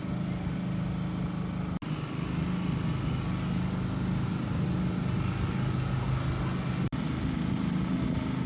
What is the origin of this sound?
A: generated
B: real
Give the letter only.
B